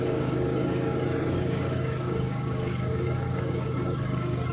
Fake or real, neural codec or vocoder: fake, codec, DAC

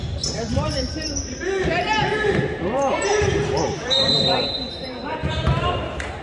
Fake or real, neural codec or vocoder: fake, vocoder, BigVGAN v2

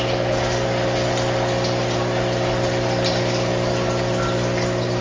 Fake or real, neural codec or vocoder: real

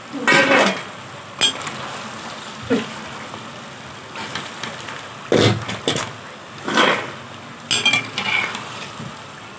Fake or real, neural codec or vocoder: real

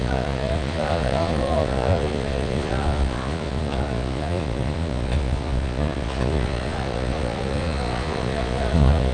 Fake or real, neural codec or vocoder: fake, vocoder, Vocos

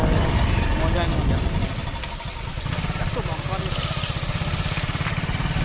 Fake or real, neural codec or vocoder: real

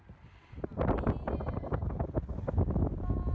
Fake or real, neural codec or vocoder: real